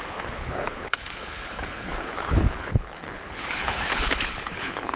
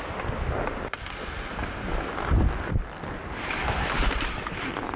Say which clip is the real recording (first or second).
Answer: second